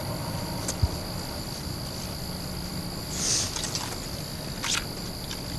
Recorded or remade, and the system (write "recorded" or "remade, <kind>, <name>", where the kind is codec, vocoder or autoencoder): recorded